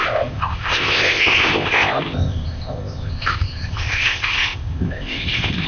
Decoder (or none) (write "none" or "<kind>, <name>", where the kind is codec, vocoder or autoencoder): codec, ZipCodec